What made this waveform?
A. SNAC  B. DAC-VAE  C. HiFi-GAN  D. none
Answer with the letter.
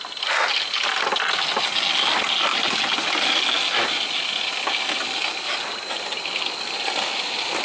D